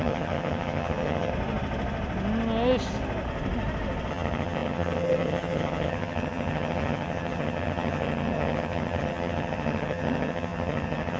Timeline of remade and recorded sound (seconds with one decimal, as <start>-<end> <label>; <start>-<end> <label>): 0.0-1.3 remade; 1.3-4.1 recorded; 4.1-11.2 remade